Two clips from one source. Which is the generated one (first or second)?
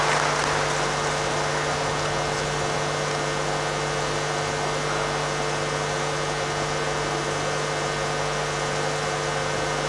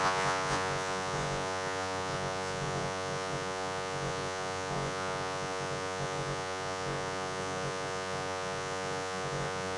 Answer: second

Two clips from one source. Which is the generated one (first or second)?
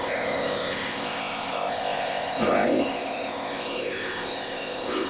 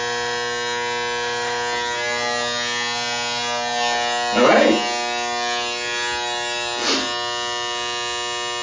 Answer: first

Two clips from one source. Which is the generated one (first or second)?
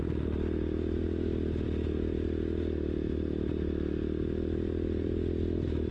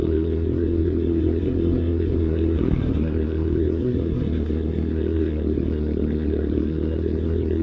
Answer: second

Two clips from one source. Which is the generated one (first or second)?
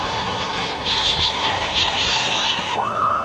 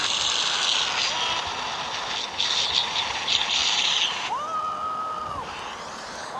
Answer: first